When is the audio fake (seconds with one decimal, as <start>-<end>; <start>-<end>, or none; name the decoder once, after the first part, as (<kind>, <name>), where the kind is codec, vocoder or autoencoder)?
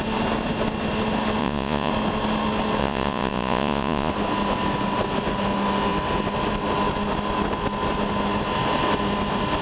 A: 1.4-1.9 (vocoder, Vocos); 2.8-4.1